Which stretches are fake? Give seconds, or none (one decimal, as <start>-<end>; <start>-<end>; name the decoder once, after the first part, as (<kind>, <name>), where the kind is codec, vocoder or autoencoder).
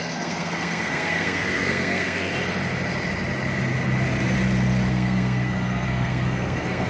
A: 0.0-2.3 (codec, SNAC); 4.9-6.9